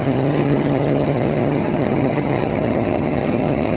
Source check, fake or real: fake